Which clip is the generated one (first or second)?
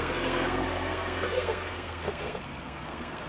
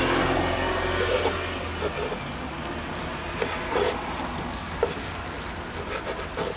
first